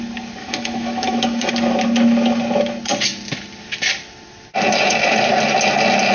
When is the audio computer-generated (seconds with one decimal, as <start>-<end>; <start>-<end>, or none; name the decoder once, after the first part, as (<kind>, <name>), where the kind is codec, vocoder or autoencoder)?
0.4-1.5 (autoencoder, DAC-VAE)